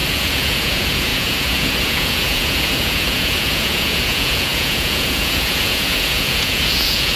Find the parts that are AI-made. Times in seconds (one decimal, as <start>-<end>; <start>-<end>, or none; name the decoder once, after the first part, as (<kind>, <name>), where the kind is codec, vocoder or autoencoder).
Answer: 0.0-7.2 (vocoder, Vocos)